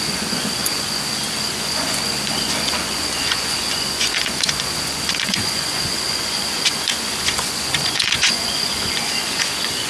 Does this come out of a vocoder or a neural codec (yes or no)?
yes